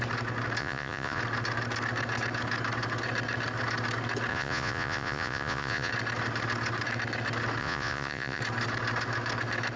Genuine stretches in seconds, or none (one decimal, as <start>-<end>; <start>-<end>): 0.0-0.6; 1.2-4.3; 5.9-7.6; 8.4-9.8